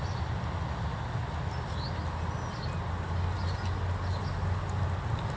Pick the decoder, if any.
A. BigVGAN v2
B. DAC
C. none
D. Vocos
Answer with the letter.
C